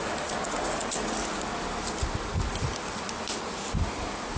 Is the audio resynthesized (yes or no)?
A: no